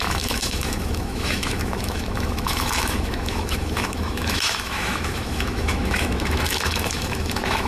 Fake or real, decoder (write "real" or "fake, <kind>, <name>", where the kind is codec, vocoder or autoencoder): fake, autoencoder, DAC-VAE